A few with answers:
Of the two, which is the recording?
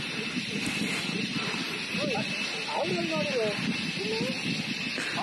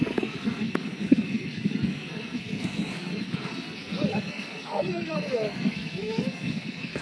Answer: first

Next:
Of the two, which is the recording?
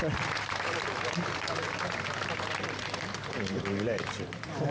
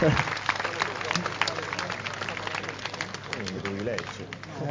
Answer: second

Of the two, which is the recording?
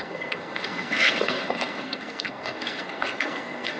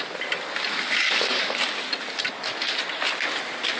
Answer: second